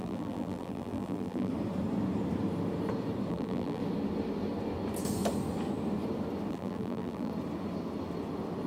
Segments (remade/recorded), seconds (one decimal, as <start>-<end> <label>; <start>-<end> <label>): 0.0-1.5 remade; 1.5-3.3 recorded; 3.3-3.8 remade; 3.8-6.5 recorded; 6.5-7.3 remade; 7.3-8.7 recorded

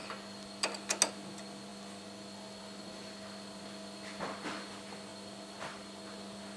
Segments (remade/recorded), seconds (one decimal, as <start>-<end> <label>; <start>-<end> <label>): 0.0-6.6 recorded

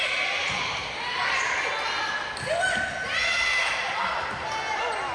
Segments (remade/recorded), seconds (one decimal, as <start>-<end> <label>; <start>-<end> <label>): 0.0-5.1 recorded

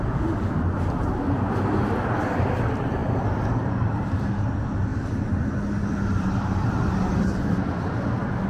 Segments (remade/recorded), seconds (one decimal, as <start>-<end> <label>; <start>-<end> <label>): 0.0-3.0 recorded; 3.0-3.7 remade; 3.7-4.9 recorded; 4.9-7.7 remade; 7.7-8.5 recorded

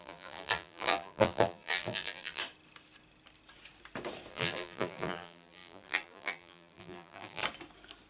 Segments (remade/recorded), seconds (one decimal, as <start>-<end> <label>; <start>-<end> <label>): 0.0-2.4 remade; 2.4-4.3 recorded; 4.3-7.4 remade; 7.4-8.1 recorded

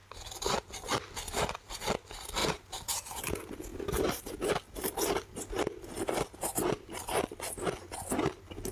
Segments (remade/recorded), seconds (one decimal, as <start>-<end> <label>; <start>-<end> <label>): 0.0-2.4 recorded; 2.4-3.2 remade; 3.2-3.7 recorded; 3.7-4.3 remade; 4.3-8.7 recorded

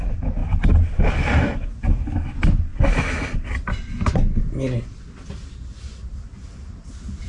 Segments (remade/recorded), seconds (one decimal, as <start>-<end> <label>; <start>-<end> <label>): 0.0-7.3 recorded

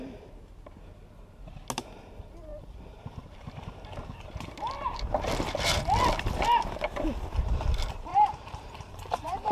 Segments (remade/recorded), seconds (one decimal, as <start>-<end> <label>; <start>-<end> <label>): 0.0-8.1 recorded; 8.1-9.5 remade